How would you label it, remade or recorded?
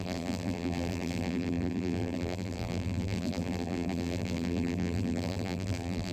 remade